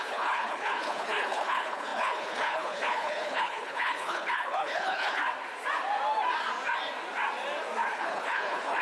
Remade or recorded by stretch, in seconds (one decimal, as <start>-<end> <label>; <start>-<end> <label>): 0.0-5.2 remade; 5.2-7.9 recorded; 7.9-8.8 remade